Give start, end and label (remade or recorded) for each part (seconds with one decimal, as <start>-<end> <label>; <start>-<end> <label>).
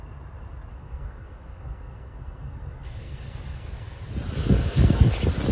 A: 0.0-0.7 recorded; 0.7-4.0 remade; 4.0-4.4 recorded; 4.4-5.1 remade; 5.1-5.5 recorded